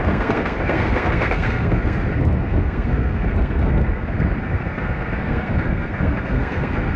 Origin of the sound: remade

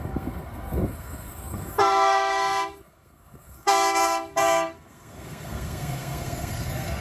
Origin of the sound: remade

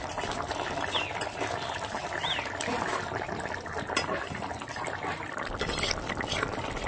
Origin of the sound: recorded